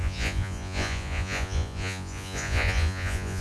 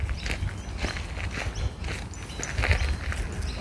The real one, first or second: second